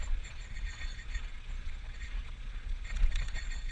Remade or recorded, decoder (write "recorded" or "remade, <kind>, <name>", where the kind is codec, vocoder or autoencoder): remade, vocoder, Vocos